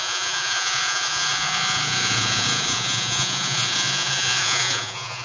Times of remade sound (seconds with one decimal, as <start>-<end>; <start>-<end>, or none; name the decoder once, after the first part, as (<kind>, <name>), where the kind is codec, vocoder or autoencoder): 0.0-5.2 (vocoder, Vocos)